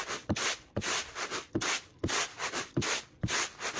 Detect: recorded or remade recorded